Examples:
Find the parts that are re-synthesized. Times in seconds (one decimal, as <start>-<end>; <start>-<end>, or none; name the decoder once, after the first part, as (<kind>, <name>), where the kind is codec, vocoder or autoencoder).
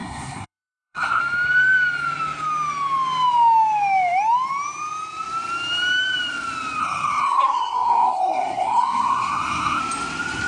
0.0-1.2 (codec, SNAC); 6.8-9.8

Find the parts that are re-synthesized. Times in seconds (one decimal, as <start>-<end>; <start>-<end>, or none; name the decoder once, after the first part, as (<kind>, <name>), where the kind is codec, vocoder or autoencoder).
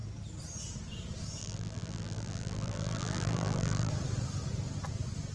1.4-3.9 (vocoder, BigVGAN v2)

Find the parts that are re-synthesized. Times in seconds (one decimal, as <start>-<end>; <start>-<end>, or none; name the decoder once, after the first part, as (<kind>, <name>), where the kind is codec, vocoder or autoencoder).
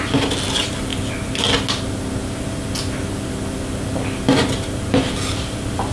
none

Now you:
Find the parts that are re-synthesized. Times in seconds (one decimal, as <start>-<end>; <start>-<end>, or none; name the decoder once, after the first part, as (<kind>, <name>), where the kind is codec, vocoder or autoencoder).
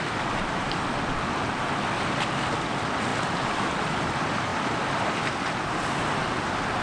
3.1-4.0 (vocoder, BigVGAN v2); 4.5-5.3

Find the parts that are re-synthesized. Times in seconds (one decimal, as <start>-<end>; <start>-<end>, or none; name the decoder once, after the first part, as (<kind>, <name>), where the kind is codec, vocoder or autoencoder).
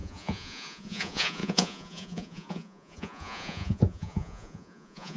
0.0-5.2 (vocoder, Vocos)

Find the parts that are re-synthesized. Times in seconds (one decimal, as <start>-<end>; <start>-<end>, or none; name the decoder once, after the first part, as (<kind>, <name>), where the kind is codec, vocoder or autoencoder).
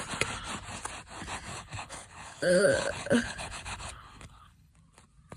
1.5-4.7 (codec, HILCodec)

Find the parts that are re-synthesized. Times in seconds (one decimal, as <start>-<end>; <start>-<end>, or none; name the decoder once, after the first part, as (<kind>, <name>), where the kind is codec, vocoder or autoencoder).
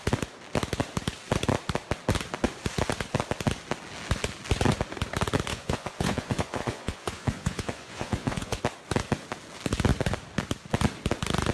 5.5-8.6 (vocoder, Vocos)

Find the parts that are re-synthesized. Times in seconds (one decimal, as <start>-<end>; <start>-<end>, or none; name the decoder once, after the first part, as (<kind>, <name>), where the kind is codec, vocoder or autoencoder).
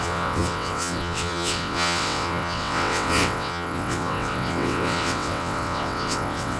0.0-6.6 (vocoder, WaveNeXt)